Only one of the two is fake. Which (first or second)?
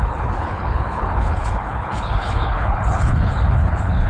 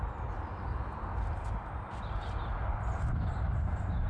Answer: first